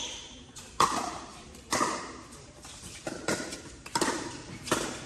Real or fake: fake